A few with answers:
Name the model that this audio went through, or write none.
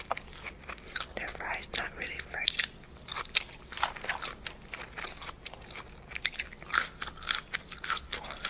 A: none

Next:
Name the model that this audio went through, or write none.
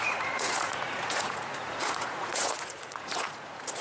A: vocoder, Vocos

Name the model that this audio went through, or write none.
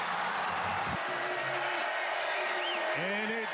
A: none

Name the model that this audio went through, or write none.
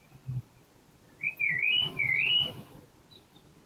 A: none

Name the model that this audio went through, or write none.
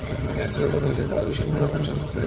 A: vocoder, HiFi-GAN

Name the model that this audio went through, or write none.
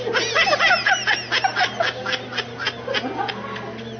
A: none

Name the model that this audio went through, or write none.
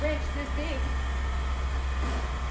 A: none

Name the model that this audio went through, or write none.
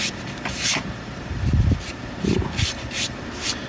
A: vocoder, BigVGAN v2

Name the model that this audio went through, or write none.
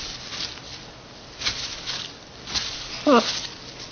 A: none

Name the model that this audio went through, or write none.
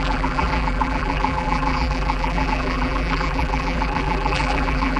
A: vocoder, BigVGAN v2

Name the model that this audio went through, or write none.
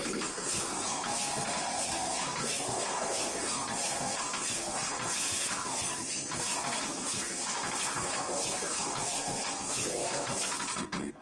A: codec, SNAC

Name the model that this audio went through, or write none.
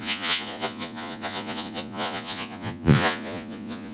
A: vocoder, Vocos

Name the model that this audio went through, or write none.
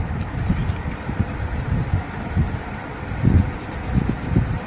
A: none